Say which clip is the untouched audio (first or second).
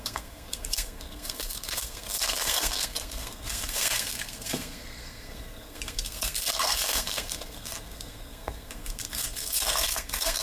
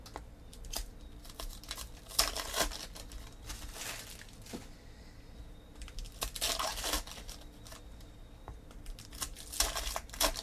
second